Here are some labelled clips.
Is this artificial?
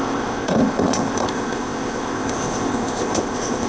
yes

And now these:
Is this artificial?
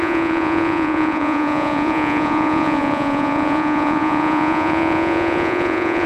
yes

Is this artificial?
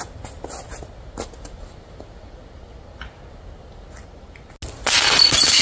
no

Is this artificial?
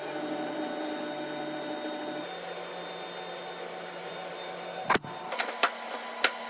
no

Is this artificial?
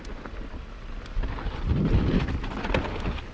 no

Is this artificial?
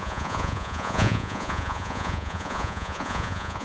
yes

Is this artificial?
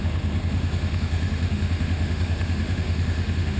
yes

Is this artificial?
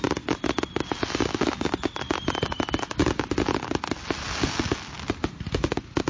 no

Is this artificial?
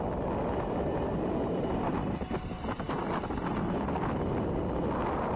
no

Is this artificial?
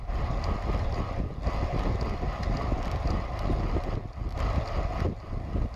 no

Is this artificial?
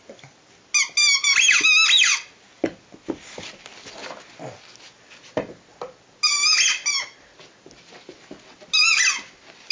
no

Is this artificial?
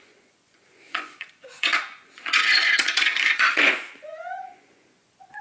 yes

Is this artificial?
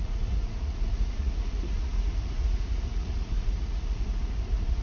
yes